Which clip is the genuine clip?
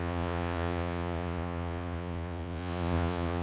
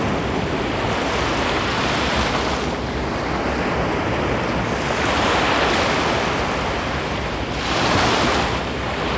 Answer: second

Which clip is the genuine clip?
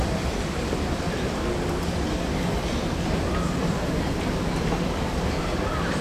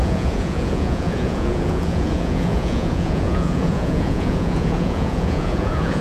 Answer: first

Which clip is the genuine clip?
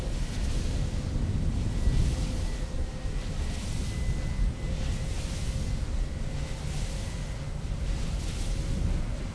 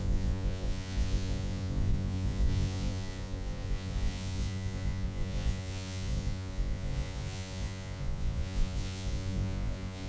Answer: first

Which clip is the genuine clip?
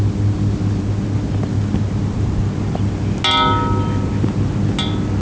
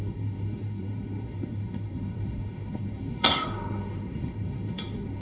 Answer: first